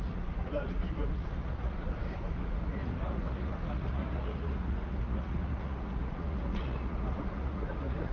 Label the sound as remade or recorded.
remade